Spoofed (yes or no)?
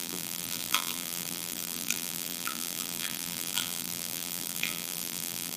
yes